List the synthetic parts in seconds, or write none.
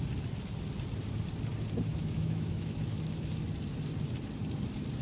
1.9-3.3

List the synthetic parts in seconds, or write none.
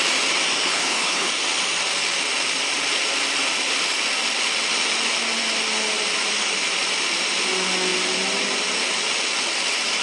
0.7-1.3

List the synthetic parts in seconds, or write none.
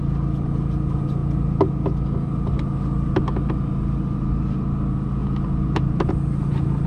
5.2-6.1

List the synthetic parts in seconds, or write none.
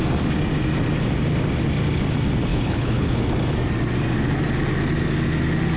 2.5-3.2